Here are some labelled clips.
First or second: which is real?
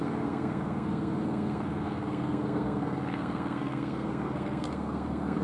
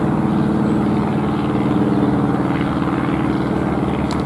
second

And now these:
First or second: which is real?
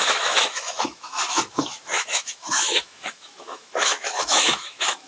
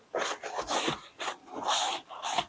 second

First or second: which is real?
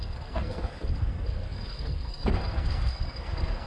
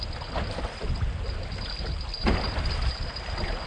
second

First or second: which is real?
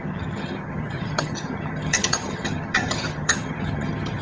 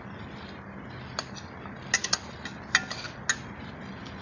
second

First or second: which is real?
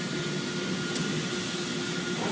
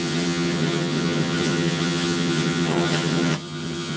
first